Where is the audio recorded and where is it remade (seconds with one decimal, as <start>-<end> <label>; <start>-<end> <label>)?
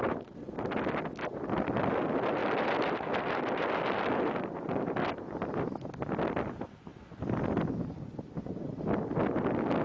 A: 0.0-9.8 recorded